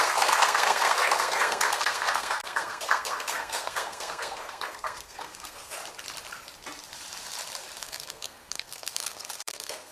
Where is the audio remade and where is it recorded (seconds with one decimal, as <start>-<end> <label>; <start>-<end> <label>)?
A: 0.0-5.8 remade; 5.8-7.8 recorded; 7.8-9.9 remade